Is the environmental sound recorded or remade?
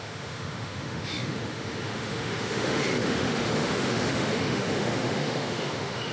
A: remade